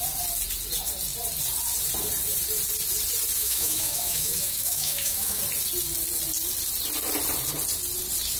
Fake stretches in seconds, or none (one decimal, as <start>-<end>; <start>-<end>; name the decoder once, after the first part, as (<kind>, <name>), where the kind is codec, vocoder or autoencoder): 3.4-5.4 (autoencoder, DAC-VAE)